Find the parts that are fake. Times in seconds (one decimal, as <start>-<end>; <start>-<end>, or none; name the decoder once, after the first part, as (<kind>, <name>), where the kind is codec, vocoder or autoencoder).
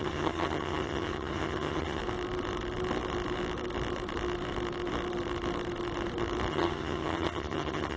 0.0-2.0 (vocoder, HiFi-GAN); 6.5-8.0